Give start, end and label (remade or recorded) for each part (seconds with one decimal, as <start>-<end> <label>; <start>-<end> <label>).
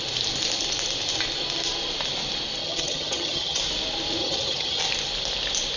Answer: 0.0-2.6 recorded; 2.6-3.6 remade; 3.6-4.2 recorded; 4.2-4.8 remade; 4.8-5.8 recorded